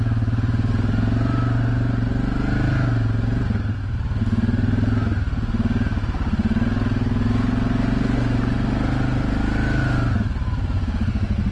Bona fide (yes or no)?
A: yes